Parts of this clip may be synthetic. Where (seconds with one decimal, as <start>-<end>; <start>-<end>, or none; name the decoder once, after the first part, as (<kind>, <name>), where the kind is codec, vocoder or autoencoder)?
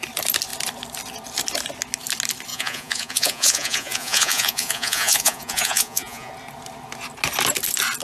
2.5-6.3 (vocoder, Vocos)